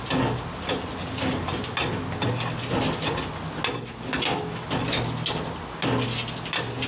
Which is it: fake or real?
real